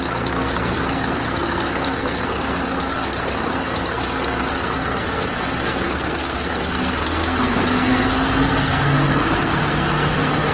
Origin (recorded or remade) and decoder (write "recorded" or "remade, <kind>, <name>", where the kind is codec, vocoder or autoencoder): remade, codec, SNAC